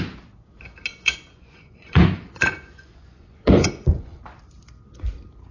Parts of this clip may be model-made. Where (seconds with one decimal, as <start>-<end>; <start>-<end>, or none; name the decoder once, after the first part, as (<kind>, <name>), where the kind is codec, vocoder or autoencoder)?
0.9-4.2 (vocoder, Vocos)